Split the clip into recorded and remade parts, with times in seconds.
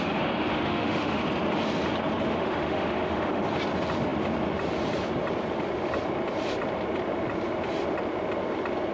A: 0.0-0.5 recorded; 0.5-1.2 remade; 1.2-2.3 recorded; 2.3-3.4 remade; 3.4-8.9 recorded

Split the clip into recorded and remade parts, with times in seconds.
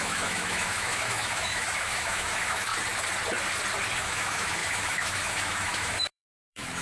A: 0.0-2.7 remade; 2.7-4.0 recorded; 4.0-6.8 remade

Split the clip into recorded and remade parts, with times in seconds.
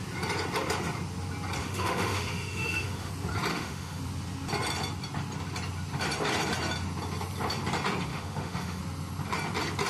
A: 0.0-1.6 recorded; 1.6-3.1 remade; 3.1-3.5 recorded; 3.5-4.0 remade; 4.0-8.1 recorded; 8.1-8.8 remade; 8.8-9.9 recorded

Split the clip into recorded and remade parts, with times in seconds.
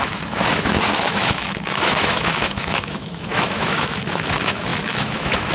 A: 0.0-5.5 remade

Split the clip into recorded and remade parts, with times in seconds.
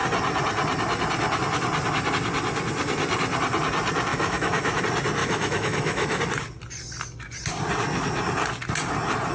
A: 0.0-4.1 recorded; 4.1-4.8 remade; 4.8-5.2 recorded; 5.2-6.2 remade; 6.2-9.3 recorded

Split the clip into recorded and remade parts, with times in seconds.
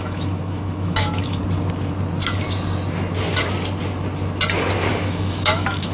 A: 0.0-1.4 remade; 1.4-4.9 recorded; 4.9-5.9 remade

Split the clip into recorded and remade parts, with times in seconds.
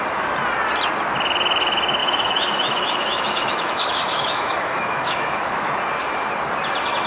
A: 0.0-2.0 recorded; 2.0-5.7 remade; 5.7-7.1 recorded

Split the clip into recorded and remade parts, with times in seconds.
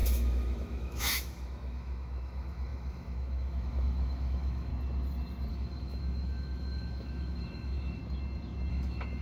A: 0.0-4.7 remade; 4.7-5.5 recorded; 5.5-8.0 remade; 8.0-8.7 recorded; 8.7-9.2 remade